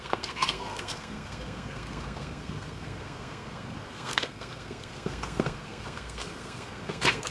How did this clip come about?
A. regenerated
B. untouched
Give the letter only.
A